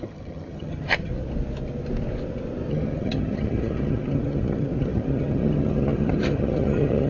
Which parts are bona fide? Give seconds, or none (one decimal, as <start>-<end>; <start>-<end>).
1.1-2.7